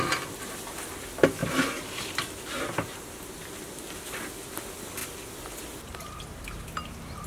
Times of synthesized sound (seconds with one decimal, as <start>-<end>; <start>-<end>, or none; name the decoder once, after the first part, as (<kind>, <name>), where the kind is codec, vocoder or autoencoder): none